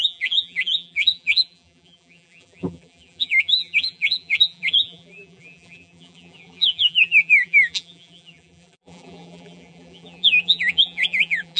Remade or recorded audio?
remade